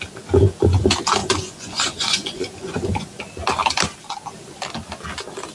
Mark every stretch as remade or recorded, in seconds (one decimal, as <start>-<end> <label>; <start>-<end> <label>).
0.0-1.2 recorded; 1.2-3.2 remade; 3.2-5.5 recorded